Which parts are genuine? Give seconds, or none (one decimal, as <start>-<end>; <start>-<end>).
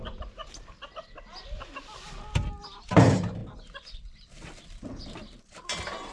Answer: 0.4-2.9; 3.4-5.4